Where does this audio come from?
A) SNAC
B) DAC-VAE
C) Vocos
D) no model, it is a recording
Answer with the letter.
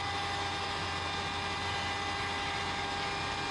D